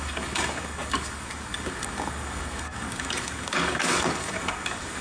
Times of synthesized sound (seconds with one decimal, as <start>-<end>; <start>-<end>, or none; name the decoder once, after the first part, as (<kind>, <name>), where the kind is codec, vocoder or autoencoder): 0.0-5.0 (codec, DAC)